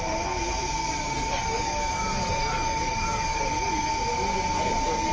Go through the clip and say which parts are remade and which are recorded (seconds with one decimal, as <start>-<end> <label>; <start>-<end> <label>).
0.0-0.8 recorded; 0.8-3.9 remade; 3.9-5.1 recorded